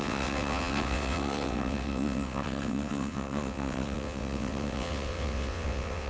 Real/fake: fake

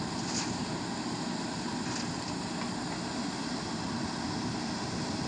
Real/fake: real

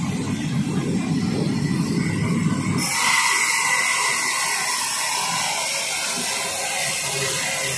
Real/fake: real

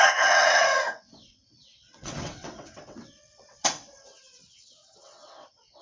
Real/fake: fake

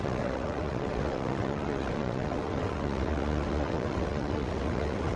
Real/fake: fake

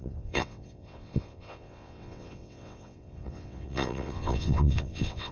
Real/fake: fake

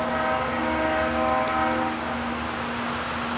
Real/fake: real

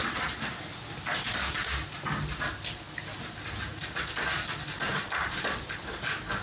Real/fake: real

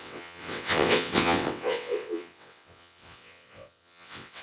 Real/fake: fake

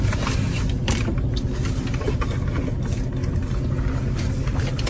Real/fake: real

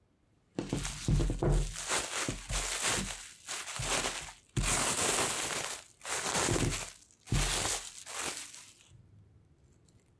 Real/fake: real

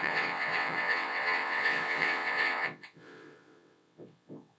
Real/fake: fake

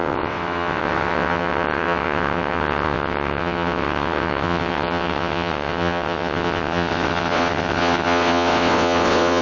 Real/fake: fake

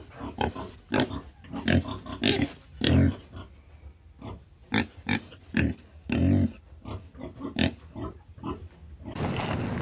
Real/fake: real